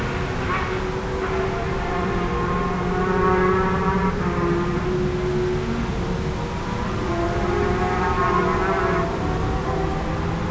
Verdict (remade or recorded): recorded